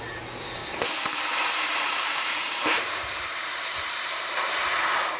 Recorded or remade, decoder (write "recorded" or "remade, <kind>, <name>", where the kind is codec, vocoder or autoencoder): remade, vocoder, BigVGAN v2